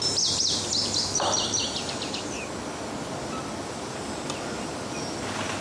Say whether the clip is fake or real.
real